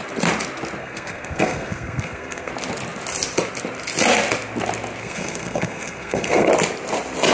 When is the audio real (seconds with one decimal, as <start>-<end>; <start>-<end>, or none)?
0.0-0.8; 2.5-5.0; 6.5-7.3